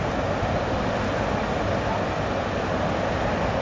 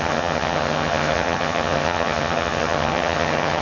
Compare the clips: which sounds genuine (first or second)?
first